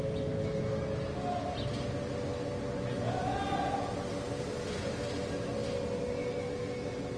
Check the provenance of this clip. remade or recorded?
recorded